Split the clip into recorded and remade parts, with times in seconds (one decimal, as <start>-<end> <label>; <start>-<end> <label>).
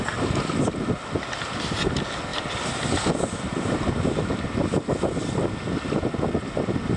0.0-7.0 recorded